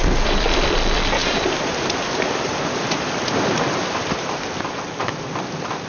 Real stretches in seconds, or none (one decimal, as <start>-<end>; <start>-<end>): none